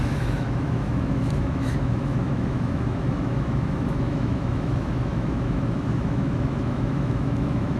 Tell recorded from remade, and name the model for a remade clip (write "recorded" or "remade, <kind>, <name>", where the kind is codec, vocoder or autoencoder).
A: remade, autoencoder, DAC-VAE